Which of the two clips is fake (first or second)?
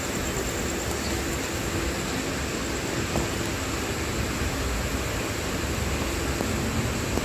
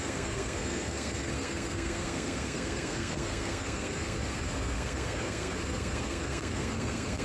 second